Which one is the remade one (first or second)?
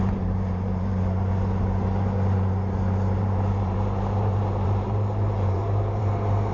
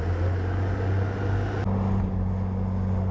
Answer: first